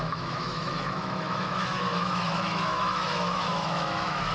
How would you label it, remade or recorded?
remade